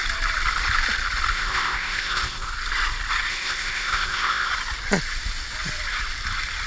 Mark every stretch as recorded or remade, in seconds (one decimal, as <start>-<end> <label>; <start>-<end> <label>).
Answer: 0.0-1.3 recorded; 1.3-2.5 remade; 2.5-3.3 recorded; 3.3-4.5 remade; 4.5-6.7 recorded